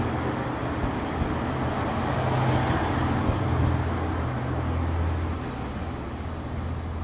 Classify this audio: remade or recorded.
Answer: recorded